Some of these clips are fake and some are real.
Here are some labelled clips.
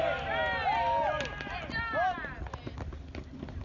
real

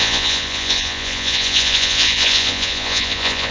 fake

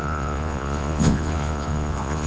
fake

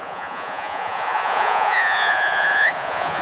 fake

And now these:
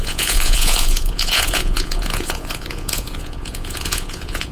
fake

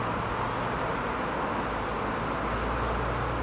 real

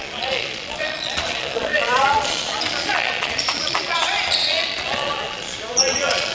fake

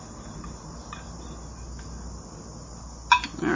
real